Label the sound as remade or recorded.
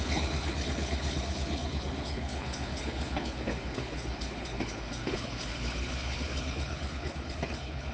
remade